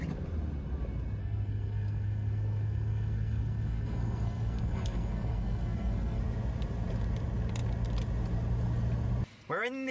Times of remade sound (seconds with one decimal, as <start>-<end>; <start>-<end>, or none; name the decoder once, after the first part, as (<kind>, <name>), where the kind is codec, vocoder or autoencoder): 1.2-6.2 (codec, SNAC)